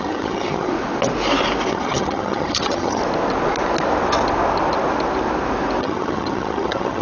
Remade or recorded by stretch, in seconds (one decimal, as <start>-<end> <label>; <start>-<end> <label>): 0.0-0.7 remade; 0.7-1.7 recorded; 1.7-3.0 remade; 3.0-5.8 recorded; 5.8-7.0 remade